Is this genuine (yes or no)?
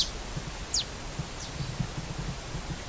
yes